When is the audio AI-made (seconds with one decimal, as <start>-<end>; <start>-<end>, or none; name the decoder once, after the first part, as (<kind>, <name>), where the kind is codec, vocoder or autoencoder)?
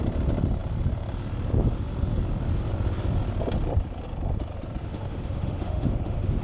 4.8-6.4 (autoencoder, DAC-VAE)